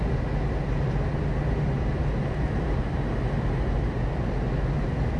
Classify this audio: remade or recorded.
recorded